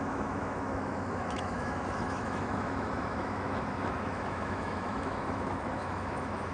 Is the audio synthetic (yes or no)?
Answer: yes